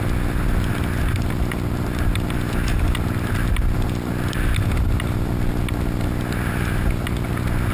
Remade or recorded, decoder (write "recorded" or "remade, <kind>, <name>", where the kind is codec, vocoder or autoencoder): recorded